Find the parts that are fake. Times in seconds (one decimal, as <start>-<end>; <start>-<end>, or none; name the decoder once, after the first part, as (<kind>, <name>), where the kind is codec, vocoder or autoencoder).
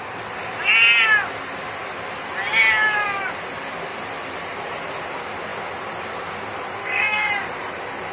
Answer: 6.8-7.3 (codec, SNAC)